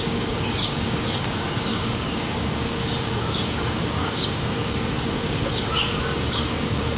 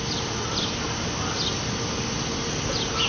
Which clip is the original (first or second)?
second